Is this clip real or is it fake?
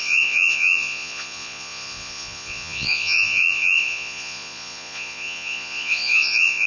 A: fake